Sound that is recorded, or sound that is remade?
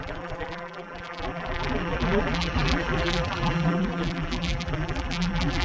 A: remade